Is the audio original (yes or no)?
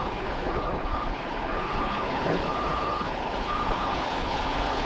no